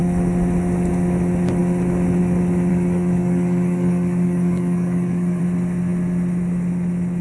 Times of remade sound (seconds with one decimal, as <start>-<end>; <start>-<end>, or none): 2.7-5.4